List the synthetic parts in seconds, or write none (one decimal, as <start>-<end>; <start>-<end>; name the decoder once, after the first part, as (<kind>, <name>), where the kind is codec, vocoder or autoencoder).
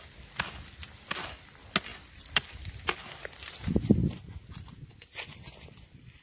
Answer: none